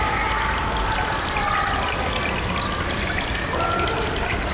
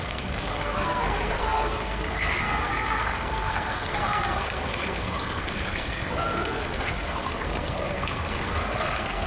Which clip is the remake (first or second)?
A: second